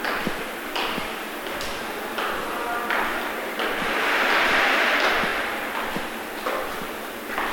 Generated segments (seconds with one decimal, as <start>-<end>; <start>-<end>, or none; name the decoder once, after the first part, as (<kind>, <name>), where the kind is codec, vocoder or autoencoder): none